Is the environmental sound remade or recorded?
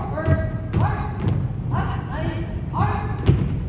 recorded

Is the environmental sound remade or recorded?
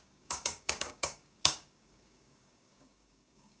remade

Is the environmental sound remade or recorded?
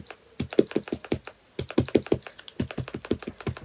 recorded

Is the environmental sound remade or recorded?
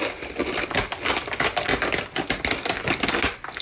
recorded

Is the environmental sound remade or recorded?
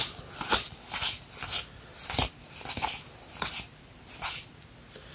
recorded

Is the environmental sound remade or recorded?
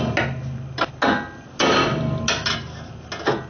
recorded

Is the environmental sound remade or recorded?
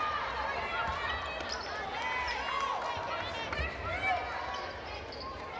recorded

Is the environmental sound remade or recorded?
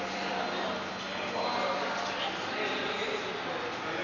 recorded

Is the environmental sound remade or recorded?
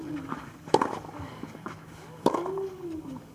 remade